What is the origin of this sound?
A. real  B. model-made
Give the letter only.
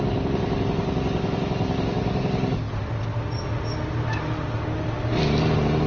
A